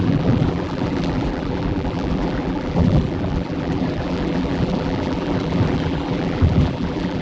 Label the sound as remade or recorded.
remade